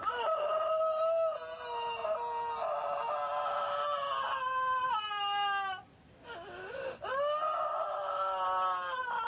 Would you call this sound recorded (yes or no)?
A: yes